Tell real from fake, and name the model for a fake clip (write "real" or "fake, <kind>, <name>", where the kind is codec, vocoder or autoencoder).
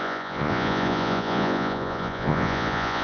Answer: fake, vocoder, Vocos